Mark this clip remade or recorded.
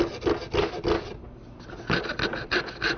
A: recorded